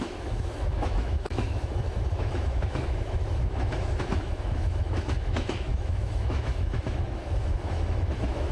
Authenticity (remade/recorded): remade